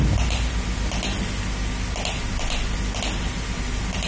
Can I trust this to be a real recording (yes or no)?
yes